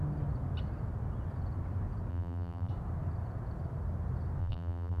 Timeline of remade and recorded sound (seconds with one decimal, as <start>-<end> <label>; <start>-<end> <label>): 0.0-2.1 recorded; 2.1-2.7 remade; 2.7-4.4 recorded; 4.4-5.0 remade